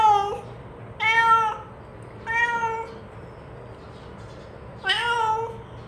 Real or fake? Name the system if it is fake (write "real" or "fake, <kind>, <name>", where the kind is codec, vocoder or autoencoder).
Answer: real